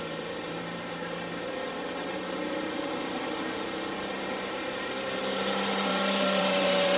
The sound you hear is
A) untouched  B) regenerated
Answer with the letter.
B